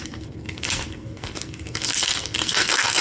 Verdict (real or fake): fake